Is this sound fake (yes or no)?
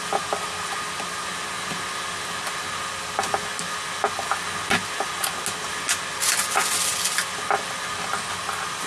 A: no